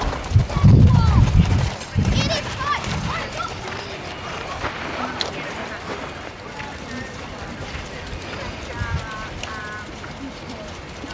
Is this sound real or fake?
real